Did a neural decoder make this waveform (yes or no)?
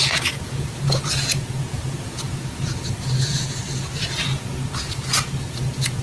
yes